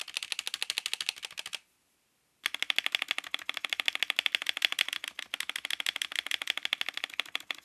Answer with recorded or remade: recorded